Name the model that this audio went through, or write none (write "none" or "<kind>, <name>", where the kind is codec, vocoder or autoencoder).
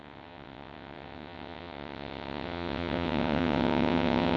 vocoder, WaveNeXt